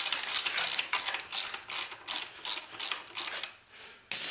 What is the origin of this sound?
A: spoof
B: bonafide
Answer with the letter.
B